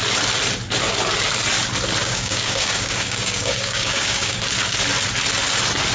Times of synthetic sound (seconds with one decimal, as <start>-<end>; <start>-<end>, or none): 2.0-4.4